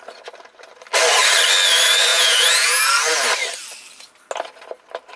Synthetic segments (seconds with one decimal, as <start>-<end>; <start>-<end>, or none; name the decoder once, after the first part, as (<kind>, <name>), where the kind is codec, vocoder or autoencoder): 2.1-2.8 (vocoder, Vocos)

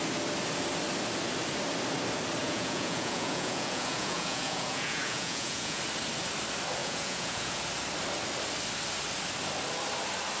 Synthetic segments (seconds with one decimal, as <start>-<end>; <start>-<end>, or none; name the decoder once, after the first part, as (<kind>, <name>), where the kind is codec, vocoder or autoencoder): 2.4-5.8 (vocoder, Vocos); 6.8-7.6